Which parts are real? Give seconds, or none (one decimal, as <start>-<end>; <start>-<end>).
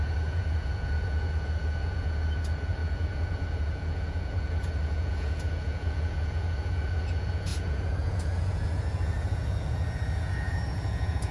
none